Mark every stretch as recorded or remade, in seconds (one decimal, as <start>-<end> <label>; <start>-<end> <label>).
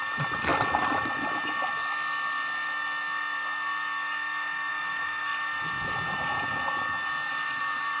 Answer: 0.0-0.5 remade; 0.5-4.7 recorded; 4.7-5.3 remade; 5.3-7.6 recorded; 7.6-8.0 remade